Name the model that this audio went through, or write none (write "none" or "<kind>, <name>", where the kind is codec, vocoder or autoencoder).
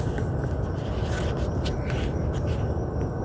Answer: none